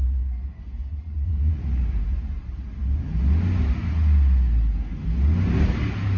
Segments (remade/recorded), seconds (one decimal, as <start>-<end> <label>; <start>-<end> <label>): 0.0-0.9 recorded; 0.9-1.8 remade; 1.8-6.2 recorded